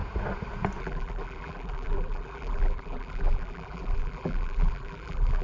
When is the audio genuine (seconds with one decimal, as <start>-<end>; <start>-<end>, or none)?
0.0-0.8